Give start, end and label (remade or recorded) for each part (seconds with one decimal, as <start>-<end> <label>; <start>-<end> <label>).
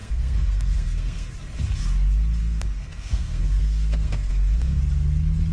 0.0-1.3 remade; 1.3-2.4 recorded; 2.4-4.8 remade; 4.8-5.5 recorded